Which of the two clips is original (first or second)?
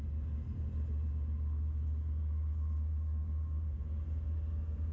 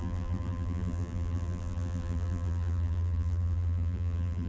first